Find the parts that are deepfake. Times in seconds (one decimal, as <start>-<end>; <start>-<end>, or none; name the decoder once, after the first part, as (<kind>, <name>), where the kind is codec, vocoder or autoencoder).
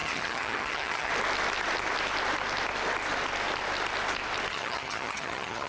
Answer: 0.0-1.1 (vocoder, HiFi-GAN); 4.5-5.7